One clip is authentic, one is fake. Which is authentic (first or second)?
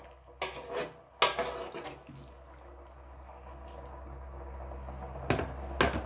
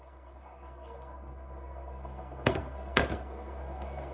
first